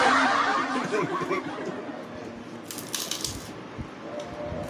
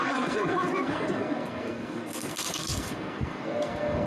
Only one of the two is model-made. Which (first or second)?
second